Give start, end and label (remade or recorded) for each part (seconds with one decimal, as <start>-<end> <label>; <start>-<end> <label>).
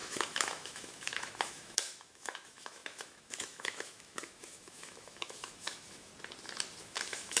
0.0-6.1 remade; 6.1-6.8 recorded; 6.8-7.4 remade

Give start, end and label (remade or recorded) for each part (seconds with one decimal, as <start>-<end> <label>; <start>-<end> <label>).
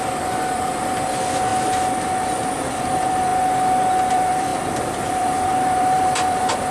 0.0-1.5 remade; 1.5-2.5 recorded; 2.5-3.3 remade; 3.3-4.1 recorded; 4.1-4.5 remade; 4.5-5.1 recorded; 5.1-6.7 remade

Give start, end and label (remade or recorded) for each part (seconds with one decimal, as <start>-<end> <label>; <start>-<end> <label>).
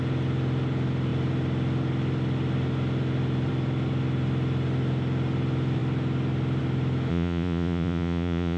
0.0-7.1 recorded; 7.1-8.6 remade